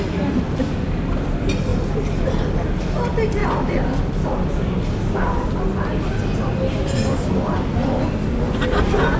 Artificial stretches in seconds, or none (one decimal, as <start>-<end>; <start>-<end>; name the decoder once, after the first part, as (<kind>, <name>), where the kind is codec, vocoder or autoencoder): none